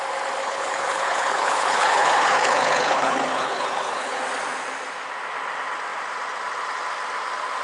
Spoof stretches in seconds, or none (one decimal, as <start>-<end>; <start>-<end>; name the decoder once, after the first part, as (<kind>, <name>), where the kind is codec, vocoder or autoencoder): 0.4-4.2 (codec, HILCodec)